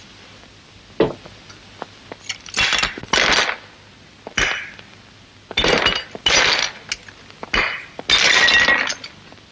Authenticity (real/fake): real